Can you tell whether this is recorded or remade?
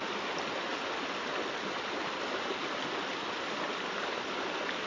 recorded